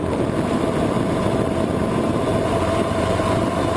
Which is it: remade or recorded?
remade